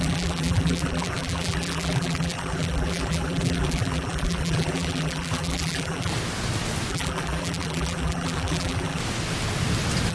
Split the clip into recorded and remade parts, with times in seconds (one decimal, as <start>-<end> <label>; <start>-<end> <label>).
0.0-6.1 remade; 6.1-6.9 recorded; 6.9-9.0 remade; 9.0-10.1 recorded